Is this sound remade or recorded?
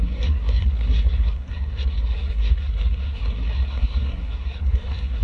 remade